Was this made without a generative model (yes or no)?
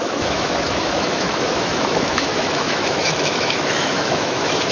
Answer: no